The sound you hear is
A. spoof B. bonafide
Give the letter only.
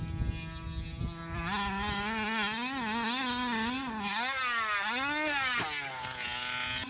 B